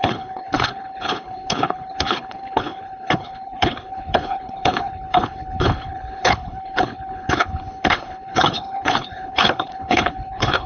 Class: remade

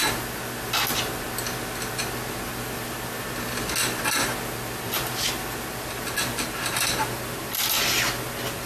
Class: recorded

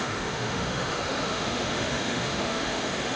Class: remade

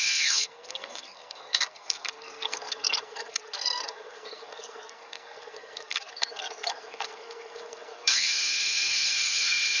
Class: remade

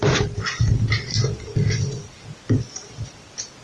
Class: recorded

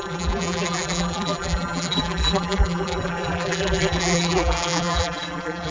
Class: remade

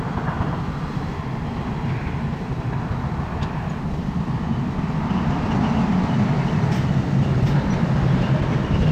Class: recorded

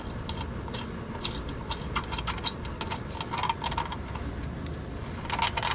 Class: recorded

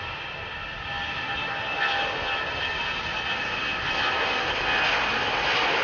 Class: recorded